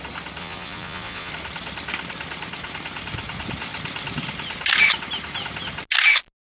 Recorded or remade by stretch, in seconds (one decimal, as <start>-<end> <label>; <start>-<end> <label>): 0.0-0.4 recorded; 0.4-1.3 remade; 1.3-6.5 recorded